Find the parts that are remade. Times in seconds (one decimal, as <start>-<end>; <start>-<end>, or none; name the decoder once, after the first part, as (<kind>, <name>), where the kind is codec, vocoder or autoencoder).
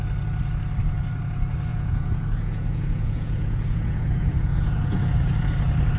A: 1.7-5.3 (vocoder, Vocos)